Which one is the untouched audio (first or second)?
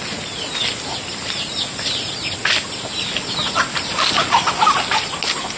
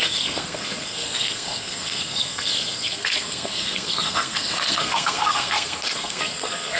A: first